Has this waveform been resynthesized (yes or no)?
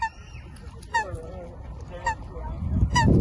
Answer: no